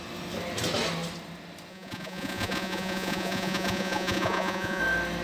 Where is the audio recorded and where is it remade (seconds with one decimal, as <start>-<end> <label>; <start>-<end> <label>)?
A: 0.0-1.7 recorded; 1.7-4.8 remade; 4.8-5.2 recorded